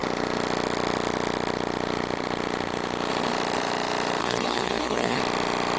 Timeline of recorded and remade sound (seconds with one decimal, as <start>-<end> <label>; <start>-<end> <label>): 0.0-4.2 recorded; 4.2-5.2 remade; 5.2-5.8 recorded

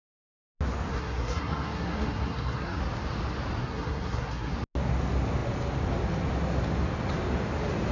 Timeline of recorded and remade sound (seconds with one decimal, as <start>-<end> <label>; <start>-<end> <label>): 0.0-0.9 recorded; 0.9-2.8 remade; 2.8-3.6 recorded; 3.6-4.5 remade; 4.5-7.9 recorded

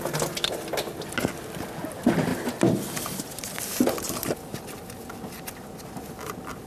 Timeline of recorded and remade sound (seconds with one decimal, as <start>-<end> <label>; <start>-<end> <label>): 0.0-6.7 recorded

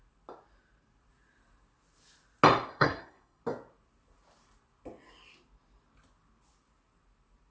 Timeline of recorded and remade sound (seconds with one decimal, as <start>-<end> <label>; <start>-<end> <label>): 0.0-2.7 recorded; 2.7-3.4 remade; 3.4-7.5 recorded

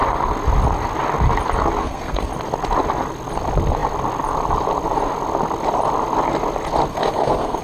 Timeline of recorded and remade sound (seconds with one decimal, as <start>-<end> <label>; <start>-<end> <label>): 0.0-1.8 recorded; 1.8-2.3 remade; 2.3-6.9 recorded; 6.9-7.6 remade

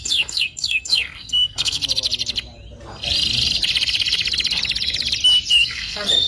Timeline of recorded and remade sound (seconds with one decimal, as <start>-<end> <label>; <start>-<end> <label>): 0.0-1.8 remade; 1.8-5.5 recorded; 5.5-6.3 remade

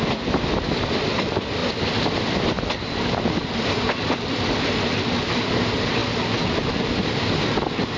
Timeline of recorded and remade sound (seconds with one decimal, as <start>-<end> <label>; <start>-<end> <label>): 0.0-8.0 recorded

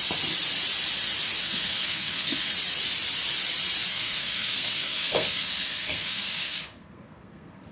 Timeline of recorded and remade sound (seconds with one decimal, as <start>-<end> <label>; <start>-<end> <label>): 0.0-1.4 recorded; 1.4-2.5 remade; 2.5-3.9 recorded; 3.9-7.7 remade